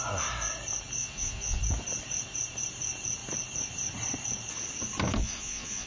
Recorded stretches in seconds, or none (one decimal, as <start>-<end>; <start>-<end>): 0.0-1.0; 1.6-5.2